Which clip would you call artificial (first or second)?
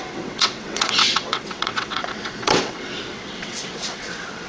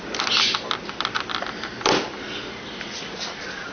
first